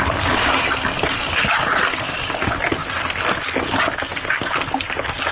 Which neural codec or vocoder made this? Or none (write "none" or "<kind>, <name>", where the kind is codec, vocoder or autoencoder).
none